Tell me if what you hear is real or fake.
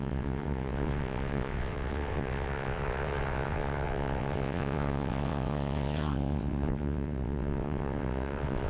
fake